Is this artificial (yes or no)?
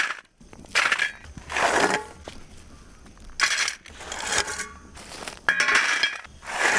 no